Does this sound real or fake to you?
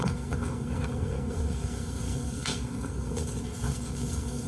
fake